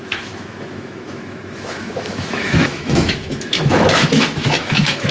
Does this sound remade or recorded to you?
remade